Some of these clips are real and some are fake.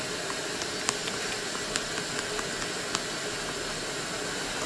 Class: real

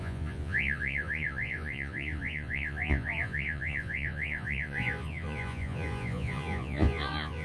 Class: fake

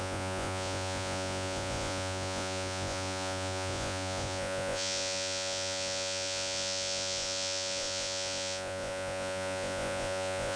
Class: fake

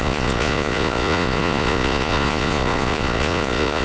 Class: fake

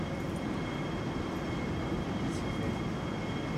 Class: real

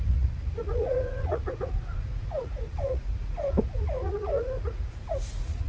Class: fake